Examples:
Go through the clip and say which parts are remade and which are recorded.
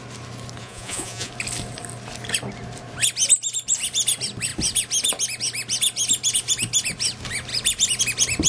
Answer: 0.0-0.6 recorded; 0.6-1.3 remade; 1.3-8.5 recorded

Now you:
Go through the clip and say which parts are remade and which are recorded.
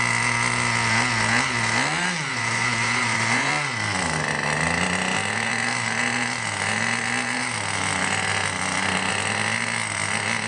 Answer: 0.0-2.3 recorded; 2.3-3.5 remade; 3.5-10.5 recorded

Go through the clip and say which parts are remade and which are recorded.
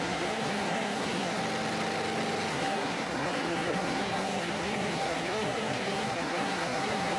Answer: 0.0-1.4 remade; 1.4-2.5 recorded; 2.5-7.2 remade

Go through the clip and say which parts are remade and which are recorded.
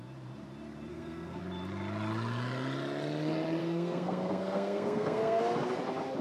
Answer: 0.0-0.9 recorded; 0.9-1.4 remade; 1.4-3.6 recorded; 3.6-5.4 remade; 5.4-6.2 recorded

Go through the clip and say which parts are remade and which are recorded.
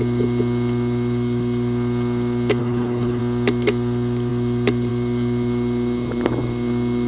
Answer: 0.0-2.6 recorded; 2.6-3.2 remade; 3.2-7.1 recorded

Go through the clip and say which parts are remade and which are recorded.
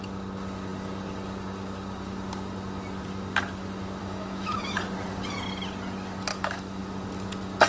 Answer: 0.0-4.0 recorded; 4.0-4.8 remade; 4.8-6.3 recorded; 6.3-6.8 remade; 6.8-7.7 recorded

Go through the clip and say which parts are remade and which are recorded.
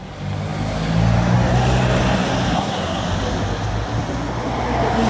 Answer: 0.0-2.5 recorded; 2.5-3.0 remade; 3.0-5.1 recorded